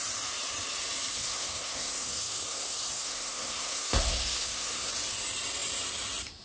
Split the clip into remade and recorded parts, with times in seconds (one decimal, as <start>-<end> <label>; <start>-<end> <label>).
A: 0.0-1.1 recorded; 1.1-4.9 remade; 4.9-6.4 recorded